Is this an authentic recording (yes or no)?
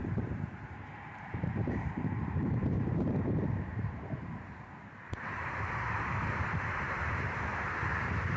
no